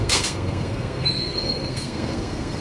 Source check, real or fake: fake